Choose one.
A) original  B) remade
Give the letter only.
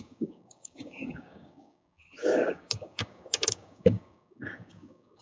B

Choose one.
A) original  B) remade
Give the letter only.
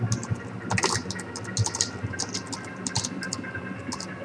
A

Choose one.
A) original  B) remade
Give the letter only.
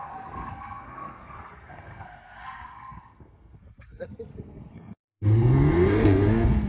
B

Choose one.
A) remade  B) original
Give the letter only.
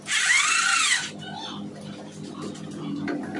B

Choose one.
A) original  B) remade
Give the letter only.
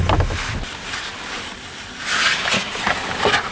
A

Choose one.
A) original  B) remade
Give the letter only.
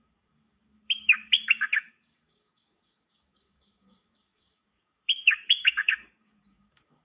B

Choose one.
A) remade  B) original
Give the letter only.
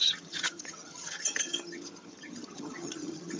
A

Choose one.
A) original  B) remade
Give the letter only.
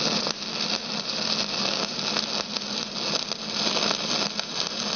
A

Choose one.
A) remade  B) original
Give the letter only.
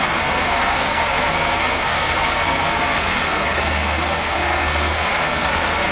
A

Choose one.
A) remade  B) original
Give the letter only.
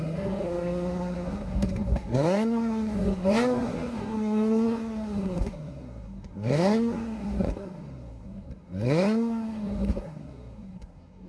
A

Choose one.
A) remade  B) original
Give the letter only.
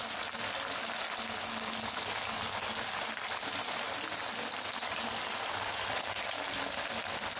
B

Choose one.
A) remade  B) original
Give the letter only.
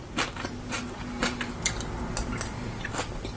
B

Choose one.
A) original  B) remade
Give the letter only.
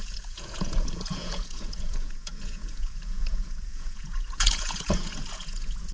B